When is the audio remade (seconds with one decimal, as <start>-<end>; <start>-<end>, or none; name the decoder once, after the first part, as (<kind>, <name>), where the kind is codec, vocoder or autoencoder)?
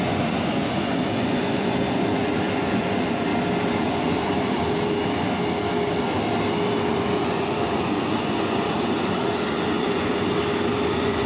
0.0-3.3 (vocoder, Vocos); 3.8-4.6; 6.9-10.1; 10.9-11.3